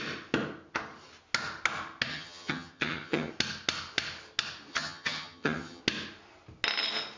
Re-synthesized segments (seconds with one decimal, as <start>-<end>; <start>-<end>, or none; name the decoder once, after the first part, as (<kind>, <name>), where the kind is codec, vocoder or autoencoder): 2.1-3.3 (vocoder, HiFi-GAN); 4.7-5.8